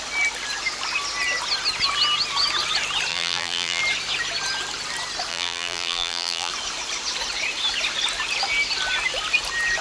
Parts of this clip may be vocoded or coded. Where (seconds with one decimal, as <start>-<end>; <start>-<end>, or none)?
3.1-3.8; 5.3-6.5

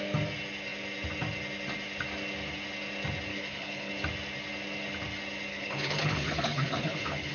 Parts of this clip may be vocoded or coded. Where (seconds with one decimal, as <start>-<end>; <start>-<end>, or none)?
3.3-3.9; 5.5-7.3

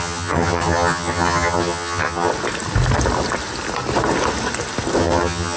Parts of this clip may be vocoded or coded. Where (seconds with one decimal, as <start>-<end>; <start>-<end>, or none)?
0.0-2.3; 5.0-5.6

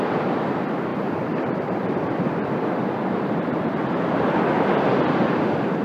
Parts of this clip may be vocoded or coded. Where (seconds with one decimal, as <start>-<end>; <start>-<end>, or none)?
0.9-4.4